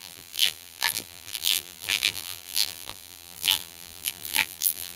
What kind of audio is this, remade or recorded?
remade